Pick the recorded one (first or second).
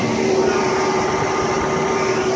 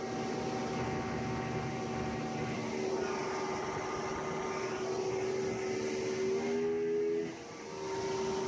second